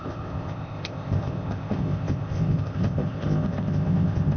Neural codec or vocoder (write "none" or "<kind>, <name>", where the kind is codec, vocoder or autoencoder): codec, ZipCodec